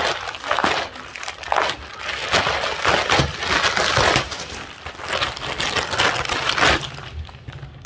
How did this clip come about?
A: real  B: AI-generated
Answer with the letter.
A